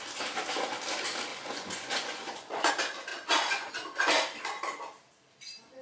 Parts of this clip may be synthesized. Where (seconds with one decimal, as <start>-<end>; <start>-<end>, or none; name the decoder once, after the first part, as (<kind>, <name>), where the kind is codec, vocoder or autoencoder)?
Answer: 1.3-2.7 (vocoder, Vocos); 3.1-3.7